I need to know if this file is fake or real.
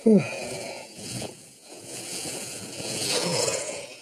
fake